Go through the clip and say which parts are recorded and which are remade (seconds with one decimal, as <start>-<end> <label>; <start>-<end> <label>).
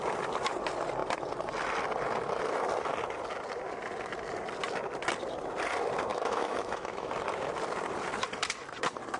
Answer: 0.0-6.1 recorded; 6.1-7.1 remade; 7.1-9.2 recorded